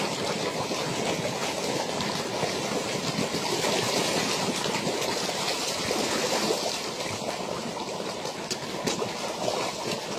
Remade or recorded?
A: recorded